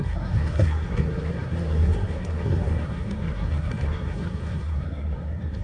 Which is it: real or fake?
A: fake